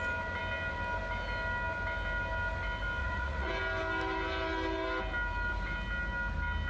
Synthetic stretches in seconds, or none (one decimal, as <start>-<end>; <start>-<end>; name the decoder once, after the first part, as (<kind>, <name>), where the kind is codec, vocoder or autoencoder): 3.0-3.5 (vocoder, Vocos)